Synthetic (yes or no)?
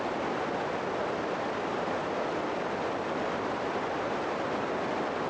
no